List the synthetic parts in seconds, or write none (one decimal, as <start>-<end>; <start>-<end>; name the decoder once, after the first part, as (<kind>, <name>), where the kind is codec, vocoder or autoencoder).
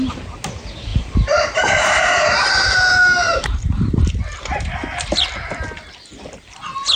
0.9-4.0 (vocoder, BigVGAN v2); 4.5-5.2